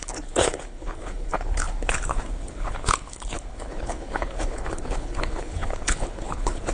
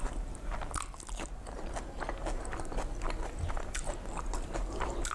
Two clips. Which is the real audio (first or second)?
second